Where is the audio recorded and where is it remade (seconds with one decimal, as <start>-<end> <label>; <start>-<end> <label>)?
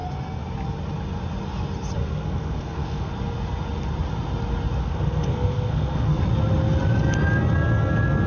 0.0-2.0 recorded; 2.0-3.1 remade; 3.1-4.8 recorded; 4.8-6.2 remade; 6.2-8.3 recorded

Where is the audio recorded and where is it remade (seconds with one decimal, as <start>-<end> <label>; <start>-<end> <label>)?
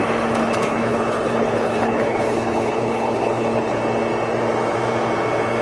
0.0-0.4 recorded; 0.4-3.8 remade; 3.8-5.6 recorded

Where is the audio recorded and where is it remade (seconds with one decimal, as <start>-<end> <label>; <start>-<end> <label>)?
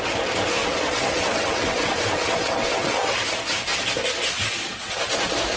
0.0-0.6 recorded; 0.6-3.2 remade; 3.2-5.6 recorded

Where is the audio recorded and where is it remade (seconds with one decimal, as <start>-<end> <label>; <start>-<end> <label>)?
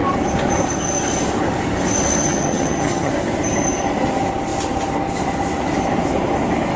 0.0-2.2 recorded; 2.2-3.1 remade; 3.1-6.8 recorded